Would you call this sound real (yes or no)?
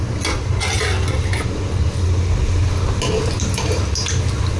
yes